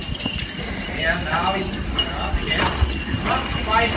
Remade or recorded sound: recorded